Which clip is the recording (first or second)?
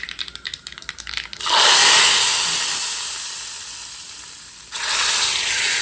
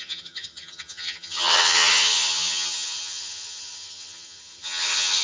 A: first